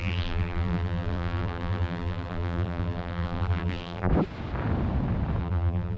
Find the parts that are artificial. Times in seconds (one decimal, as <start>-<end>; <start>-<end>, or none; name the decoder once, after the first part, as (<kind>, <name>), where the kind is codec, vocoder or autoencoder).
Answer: 0.0-4.1 (vocoder, BigVGAN v2); 5.4-6.0